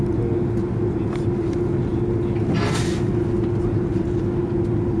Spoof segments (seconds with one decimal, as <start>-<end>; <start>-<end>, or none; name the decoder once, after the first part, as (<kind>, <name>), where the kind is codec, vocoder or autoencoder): none